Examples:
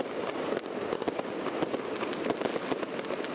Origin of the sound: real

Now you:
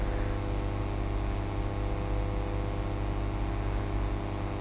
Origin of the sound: real